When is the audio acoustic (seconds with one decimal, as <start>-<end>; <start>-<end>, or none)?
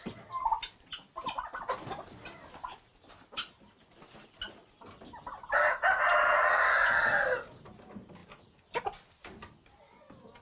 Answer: 0.0-10.4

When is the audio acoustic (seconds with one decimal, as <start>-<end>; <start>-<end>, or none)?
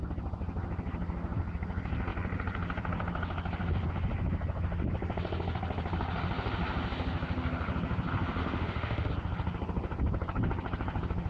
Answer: 0.0-8.4; 9.1-11.3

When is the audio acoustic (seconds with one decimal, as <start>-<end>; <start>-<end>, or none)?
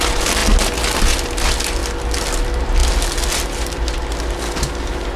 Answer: 0.0-5.2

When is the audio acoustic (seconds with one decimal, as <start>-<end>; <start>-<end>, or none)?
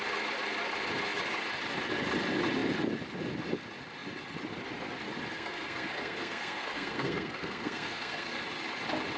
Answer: 0.0-5.3; 8.4-9.2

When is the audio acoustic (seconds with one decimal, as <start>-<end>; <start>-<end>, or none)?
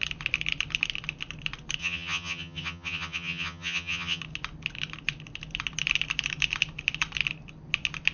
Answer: 0.0-1.8; 4.2-8.1